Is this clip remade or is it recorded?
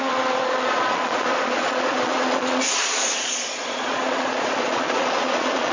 remade